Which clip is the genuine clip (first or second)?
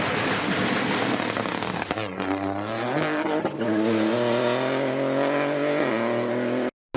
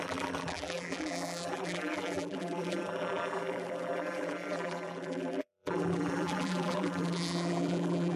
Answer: first